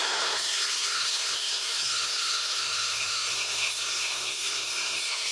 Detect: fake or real fake